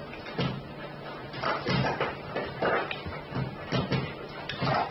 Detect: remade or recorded recorded